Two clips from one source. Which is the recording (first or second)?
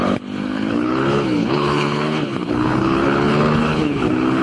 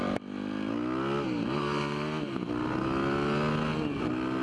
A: second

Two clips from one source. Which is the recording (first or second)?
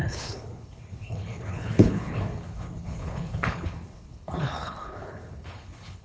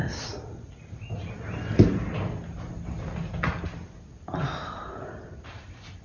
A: second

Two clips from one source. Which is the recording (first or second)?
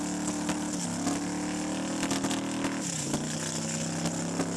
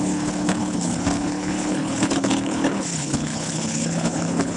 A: first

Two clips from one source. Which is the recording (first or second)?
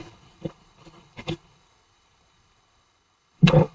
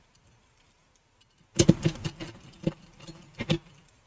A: second